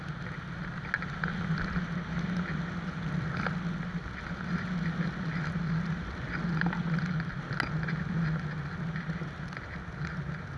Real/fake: real